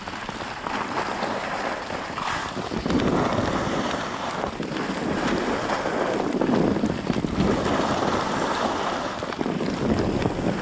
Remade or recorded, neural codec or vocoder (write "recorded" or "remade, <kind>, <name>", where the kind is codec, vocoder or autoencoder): recorded